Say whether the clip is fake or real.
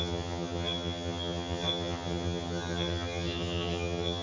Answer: fake